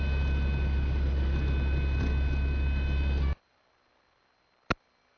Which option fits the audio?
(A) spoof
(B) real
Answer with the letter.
B